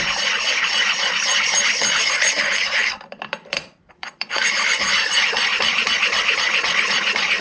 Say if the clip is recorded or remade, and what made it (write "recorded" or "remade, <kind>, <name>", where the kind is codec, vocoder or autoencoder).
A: remade, vocoder, BigVGAN v2